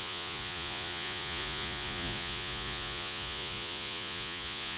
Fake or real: fake